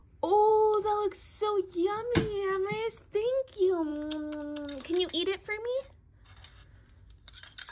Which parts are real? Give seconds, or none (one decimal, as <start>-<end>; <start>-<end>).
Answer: 0.0-7.7

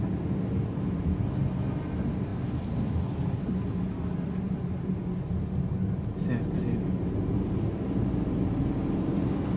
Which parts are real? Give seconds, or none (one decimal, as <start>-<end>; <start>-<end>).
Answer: 0.0-9.6

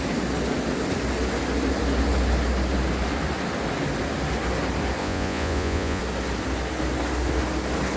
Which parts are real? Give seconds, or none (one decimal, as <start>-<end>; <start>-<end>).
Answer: 0.0-5.0; 6.0-8.0

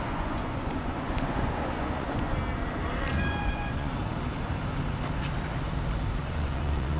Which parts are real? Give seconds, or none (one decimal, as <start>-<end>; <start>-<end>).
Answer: 2.4-3.0; 3.9-6.2

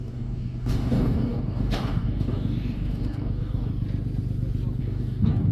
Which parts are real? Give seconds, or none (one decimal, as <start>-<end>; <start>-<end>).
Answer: 3.7-4.8